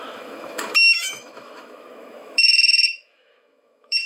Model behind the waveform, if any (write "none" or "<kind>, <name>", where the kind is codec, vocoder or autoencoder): autoencoder, DAC-VAE